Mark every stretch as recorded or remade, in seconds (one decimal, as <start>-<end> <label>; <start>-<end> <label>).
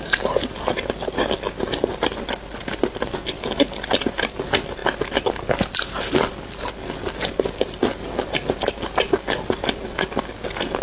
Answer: 0.0-10.8 recorded